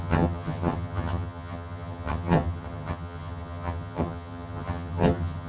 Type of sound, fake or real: fake